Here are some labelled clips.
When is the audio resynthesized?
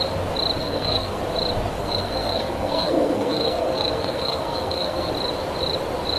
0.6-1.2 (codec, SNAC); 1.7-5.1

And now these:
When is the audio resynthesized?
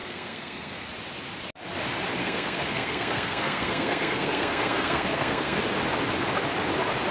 0.0-0.9 (codec, SNAC); 2.2-5.6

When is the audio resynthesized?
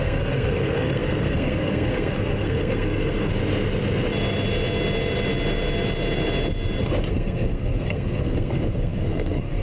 0.0-3.3 (codec, SNAC); 7.1-9.6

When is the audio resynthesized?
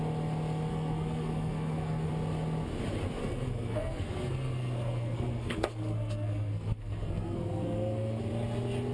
0.7-2.1 (codec, SNAC); 3.2-8.2